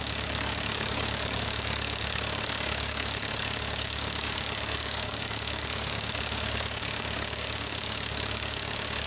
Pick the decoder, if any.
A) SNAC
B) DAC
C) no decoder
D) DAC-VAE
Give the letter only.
B